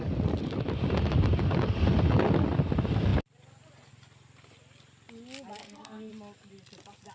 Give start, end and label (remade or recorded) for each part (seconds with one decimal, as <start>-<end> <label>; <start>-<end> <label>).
0.0-5.6 recorded; 5.6-6.1 remade; 6.1-7.1 recorded